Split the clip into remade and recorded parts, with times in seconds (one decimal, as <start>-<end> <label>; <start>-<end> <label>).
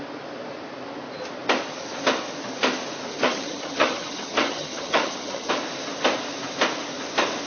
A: 0.0-3.1 recorded; 3.1-5.5 remade; 5.5-7.5 recorded